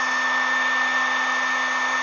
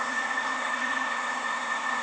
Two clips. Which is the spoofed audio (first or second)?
second